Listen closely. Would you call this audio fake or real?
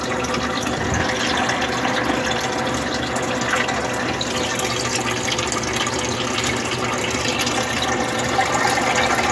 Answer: real